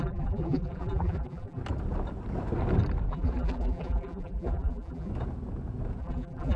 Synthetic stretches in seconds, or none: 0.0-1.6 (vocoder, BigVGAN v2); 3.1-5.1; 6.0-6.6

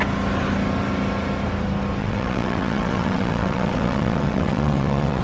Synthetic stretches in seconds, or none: 2.0-5.2 (vocoder, WaveNeXt)